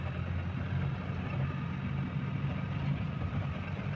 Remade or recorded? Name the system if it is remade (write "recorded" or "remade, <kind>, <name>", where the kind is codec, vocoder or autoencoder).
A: recorded